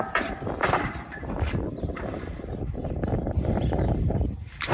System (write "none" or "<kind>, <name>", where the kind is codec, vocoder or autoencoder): vocoder, BigVGAN v2